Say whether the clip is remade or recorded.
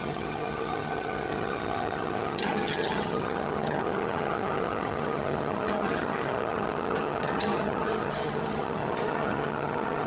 remade